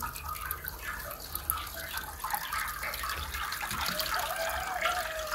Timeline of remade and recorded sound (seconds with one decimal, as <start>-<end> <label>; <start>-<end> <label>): 0.0-5.3 recorded